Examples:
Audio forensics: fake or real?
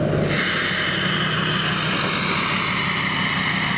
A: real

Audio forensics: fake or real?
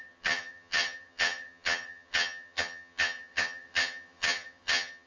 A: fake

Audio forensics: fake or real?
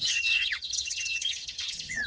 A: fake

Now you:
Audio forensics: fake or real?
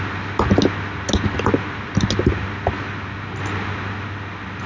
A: real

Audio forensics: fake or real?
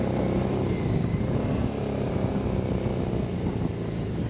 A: real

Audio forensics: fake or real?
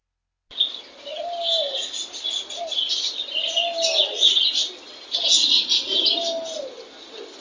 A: real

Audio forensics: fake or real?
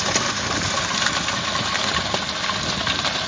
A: real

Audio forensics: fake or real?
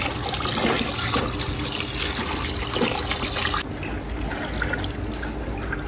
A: real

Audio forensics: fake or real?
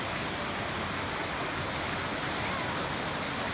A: real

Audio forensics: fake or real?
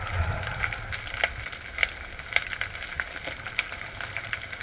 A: real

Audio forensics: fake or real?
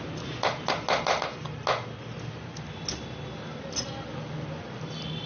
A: real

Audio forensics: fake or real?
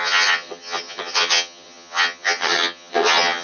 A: fake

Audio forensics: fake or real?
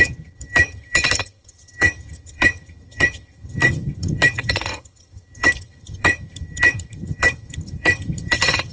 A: fake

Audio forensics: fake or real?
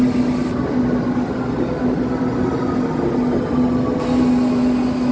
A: real